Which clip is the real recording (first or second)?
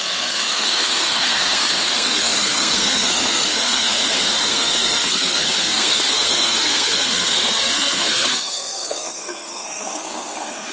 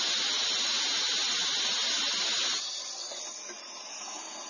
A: second